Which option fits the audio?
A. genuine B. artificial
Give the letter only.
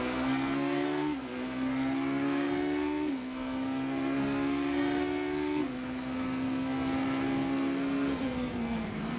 B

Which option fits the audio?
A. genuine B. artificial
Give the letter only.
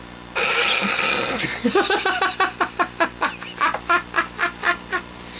A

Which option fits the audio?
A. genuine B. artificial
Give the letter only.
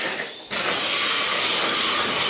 A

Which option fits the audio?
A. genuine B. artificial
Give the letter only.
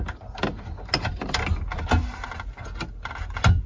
A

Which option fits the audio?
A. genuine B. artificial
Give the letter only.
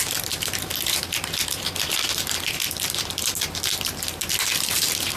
A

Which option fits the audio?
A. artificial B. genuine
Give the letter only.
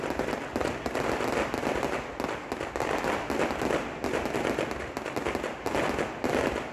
B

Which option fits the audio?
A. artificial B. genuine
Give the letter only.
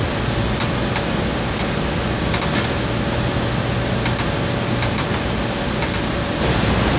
B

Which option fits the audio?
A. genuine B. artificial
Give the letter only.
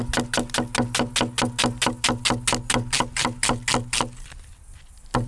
A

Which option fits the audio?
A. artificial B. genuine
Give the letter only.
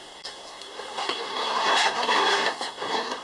A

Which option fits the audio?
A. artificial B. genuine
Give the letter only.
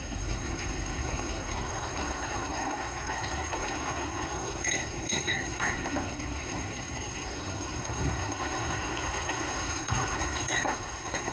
A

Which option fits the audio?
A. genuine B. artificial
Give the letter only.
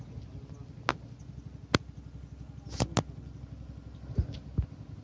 A